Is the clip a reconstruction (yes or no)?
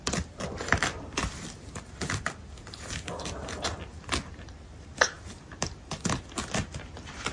no